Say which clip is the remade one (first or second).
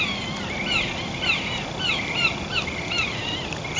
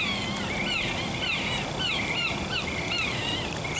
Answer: first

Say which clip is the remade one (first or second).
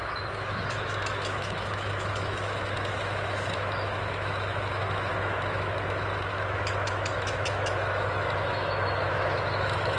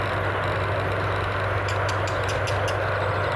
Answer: first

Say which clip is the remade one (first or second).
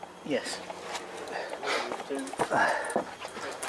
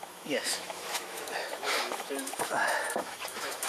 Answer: second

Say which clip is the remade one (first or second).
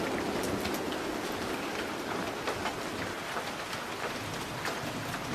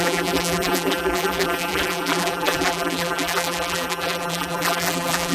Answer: second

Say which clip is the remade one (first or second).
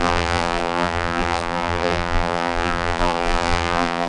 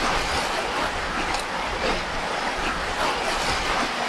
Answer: first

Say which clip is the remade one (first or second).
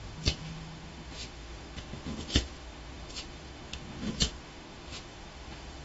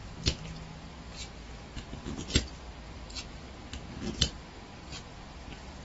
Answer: first